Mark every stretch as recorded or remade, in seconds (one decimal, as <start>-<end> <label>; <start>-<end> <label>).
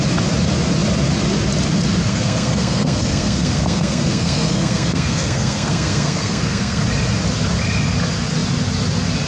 0.0-2.1 recorded; 2.1-6.8 remade; 6.8-9.3 recorded